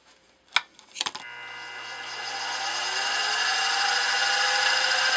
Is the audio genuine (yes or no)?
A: yes